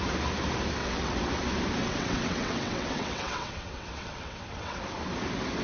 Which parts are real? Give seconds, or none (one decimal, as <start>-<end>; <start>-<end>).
0.0-0.8; 1.3-1.8; 4.8-5.6

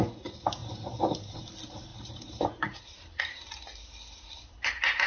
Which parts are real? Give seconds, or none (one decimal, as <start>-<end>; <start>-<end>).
0.0-0.6; 1.4-1.9; 3.2-5.1

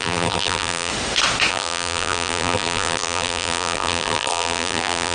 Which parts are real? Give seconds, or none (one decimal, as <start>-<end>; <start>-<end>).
0.9-1.5

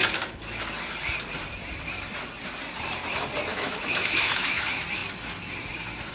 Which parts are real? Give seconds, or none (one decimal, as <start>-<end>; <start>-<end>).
0.0-3.5; 4.6-6.1

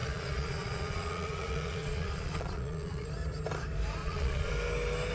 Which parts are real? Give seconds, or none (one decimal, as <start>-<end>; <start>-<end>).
3.1-4.0; 4.5-5.1